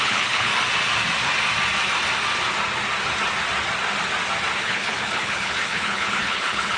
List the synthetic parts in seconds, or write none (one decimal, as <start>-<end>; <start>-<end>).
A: 0.0-0.5; 4.6-6.8